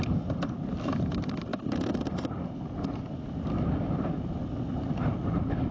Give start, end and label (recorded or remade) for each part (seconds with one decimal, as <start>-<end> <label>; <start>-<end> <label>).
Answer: 0.0-5.7 recorded